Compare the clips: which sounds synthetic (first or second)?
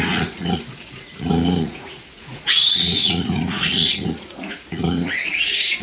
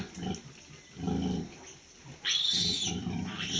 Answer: first